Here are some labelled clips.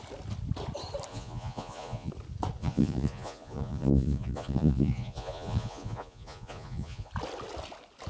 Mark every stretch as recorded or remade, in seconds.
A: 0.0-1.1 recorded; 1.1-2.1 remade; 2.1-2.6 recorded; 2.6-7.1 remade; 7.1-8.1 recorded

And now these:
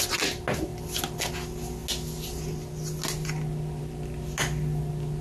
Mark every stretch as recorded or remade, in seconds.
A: 0.0-5.2 recorded

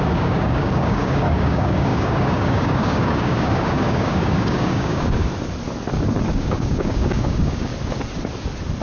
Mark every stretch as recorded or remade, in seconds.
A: 0.0-5.3 remade; 5.3-6.3 recorded; 6.3-7.7 remade; 7.7-8.8 recorded

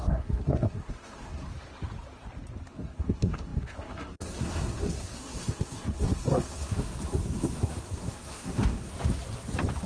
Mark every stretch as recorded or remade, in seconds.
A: 0.0-1.5 remade; 1.5-2.7 recorded; 2.7-8.9 remade; 8.9-9.9 recorded

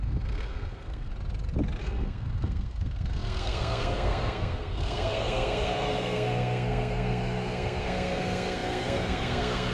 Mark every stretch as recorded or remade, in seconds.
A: 0.0-1.1 remade; 1.1-1.8 recorded; 1.8-9.7 remade